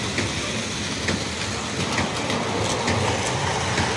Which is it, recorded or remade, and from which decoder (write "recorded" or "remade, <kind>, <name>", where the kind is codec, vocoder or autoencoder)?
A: recorded